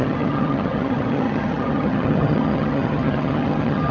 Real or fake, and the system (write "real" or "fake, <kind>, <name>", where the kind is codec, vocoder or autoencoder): fake, vocoder, HiFi-GAN